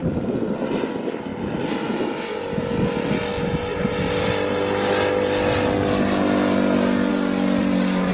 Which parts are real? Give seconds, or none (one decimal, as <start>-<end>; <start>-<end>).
0.6-7.1